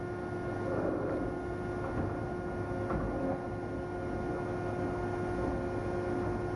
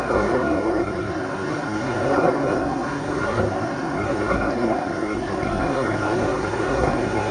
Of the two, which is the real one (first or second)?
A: first